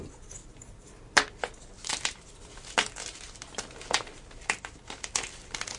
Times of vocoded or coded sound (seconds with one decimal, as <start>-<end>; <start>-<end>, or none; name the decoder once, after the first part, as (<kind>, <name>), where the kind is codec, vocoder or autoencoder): none